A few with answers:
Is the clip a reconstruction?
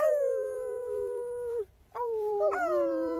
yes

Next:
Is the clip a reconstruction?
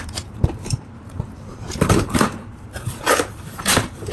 yes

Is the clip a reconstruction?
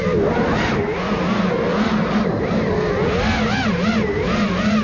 no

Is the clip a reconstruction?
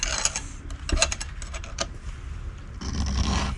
no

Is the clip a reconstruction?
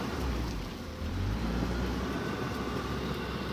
yes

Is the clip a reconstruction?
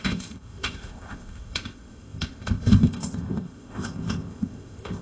yes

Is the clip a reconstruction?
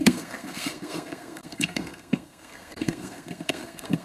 yes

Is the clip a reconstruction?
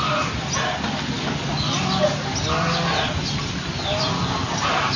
no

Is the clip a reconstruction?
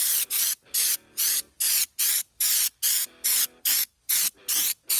no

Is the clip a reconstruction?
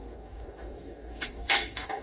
yes